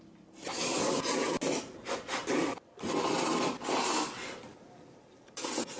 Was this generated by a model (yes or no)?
no